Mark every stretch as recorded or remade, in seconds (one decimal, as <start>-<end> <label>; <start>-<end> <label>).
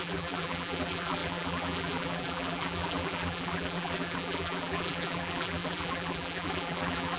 0.0-7.2 remade